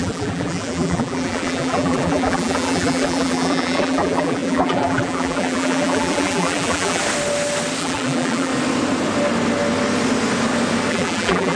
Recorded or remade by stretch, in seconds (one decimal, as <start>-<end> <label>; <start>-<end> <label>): 0.0-7.0 remade; 7.0-7.8 recorded; 7.8-8.5 remade; 8.5-10.9 recorded; 10.9-11.6 remade